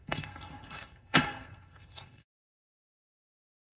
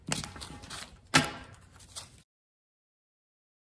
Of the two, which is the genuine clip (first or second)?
second